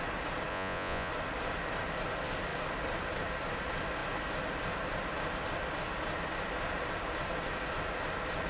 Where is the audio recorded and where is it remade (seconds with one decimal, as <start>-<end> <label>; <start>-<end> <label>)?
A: 0.0-0.5 recorded; 0.5-1.1 remade; 1.1-8.5 recorded